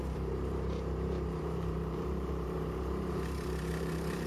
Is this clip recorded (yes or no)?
no